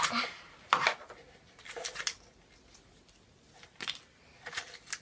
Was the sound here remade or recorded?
recorded